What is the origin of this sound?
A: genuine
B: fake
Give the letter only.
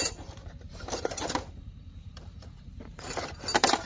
B